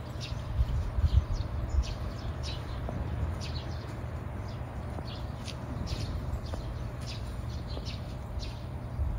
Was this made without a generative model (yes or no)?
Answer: no